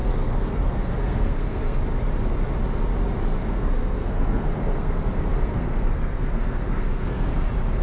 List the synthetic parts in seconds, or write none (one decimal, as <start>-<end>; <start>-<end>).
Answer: 0.0-1.8; 3.4-7.3